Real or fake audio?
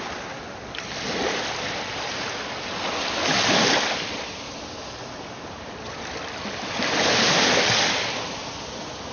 real